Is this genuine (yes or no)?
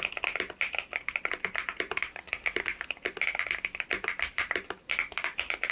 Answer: yes